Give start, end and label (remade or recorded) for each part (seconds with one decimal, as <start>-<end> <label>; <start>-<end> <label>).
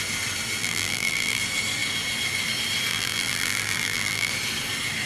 0.0-0.6 recorded; 0.6-1.4 remade; 1.4-2.9 recorded; 2.9-4.3 remade; 4.3-5.1 recorded